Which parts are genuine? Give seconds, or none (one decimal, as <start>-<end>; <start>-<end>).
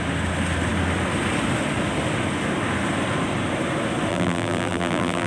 0.0-4.1